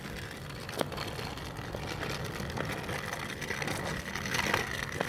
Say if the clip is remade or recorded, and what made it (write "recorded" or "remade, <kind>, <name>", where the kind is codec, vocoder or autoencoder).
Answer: recorded